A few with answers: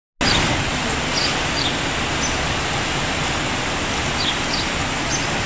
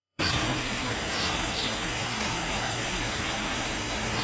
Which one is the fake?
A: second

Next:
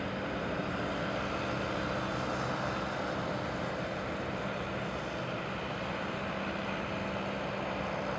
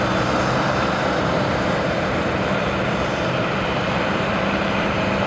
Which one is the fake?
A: second